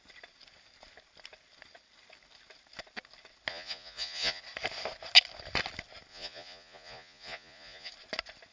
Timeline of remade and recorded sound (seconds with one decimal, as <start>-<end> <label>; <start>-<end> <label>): 0.0-3.5 recorded; 3.5-4.4 remade; 4.4-6.1 recorded; 6.1-7.9 remade; 7.9-8.5 recorded